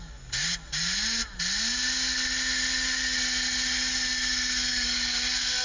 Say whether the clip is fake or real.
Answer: real